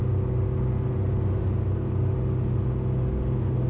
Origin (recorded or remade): recorded